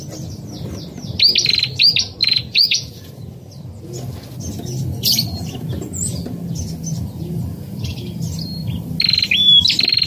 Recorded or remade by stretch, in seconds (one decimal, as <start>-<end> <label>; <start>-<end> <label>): 0.0-2.2 recorded; 2.2-3.1 remade; 3.1-10.1 recorded